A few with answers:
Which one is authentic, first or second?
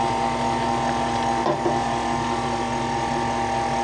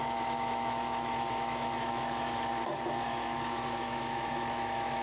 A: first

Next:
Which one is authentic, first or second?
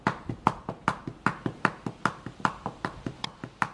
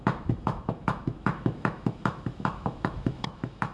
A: first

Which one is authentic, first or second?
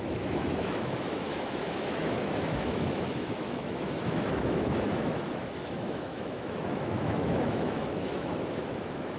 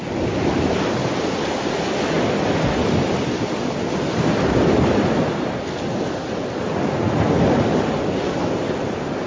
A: second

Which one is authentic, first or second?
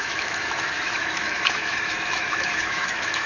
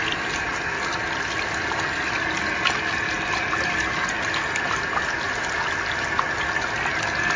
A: second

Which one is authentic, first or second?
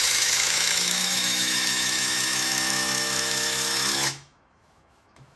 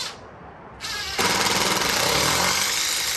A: second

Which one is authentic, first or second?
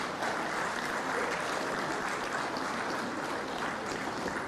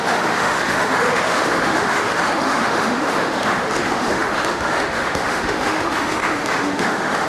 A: first